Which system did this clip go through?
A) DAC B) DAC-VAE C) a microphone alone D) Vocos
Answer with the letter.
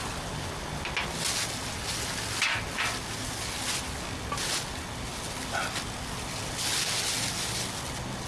C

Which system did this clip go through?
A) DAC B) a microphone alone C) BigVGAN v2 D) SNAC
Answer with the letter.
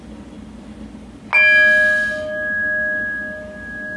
B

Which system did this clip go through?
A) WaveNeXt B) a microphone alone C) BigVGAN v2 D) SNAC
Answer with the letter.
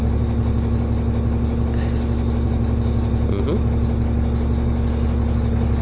B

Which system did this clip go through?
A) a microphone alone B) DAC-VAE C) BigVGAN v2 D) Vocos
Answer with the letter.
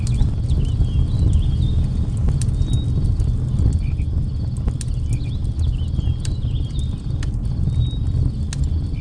A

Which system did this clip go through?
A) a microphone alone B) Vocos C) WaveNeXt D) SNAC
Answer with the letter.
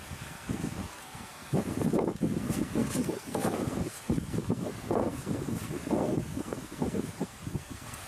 D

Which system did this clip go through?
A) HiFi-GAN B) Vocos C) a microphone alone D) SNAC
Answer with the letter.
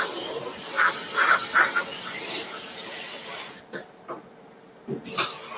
C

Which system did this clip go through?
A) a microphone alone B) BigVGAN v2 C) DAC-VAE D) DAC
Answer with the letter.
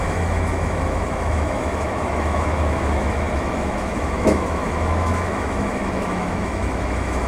C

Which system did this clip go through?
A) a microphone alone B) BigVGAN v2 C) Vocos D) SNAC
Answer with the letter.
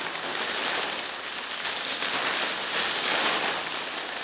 A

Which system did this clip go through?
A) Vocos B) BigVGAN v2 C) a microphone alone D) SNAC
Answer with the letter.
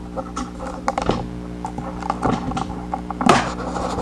C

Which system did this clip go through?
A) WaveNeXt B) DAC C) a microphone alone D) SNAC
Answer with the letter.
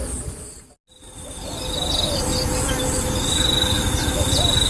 C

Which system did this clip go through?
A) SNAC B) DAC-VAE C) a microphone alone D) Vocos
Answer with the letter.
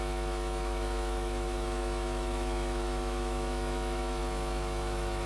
B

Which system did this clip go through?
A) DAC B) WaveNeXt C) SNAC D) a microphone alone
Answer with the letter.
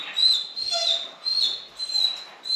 D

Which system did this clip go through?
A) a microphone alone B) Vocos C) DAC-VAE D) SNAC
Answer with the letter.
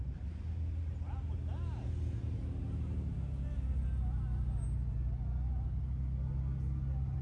A